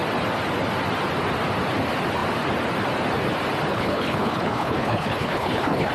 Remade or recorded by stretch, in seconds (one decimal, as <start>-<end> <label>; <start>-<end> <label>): 0.0-3.7 recorded; 3.7-5.9 remade

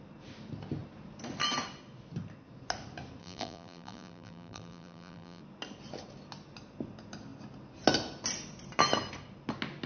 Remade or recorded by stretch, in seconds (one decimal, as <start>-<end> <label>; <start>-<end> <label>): 0.0-3.2 recorded; 3.2-5.4 remade; 5.4-9.9 recorded